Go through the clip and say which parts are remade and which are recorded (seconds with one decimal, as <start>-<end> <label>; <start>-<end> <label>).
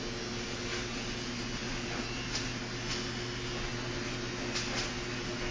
0.0-5.5 recorded